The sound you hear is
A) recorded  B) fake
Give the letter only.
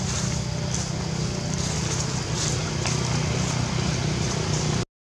A